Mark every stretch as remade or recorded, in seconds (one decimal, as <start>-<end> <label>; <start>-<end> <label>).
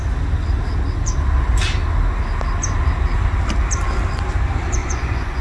0.0-4.8 recorded; 4.8-5.4 remade